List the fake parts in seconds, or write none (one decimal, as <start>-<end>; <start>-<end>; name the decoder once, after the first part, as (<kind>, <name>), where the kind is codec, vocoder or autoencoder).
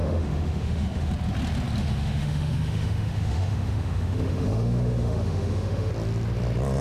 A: 0.0-1.1 (autoencoder, DAC-VAE); 1.8-5.9